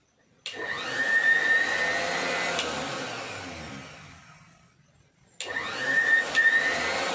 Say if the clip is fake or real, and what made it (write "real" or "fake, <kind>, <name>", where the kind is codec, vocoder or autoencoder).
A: real